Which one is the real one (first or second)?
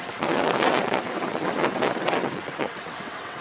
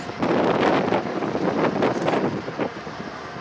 second